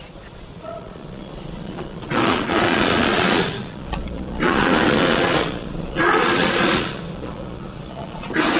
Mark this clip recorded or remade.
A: remade